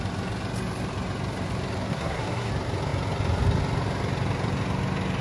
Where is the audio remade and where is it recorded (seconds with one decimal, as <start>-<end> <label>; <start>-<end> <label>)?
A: 0.0-1.9 recorded; 1.9-2.5 remade; 2.5-5.2 recorded